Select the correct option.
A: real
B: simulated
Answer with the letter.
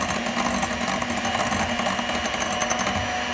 A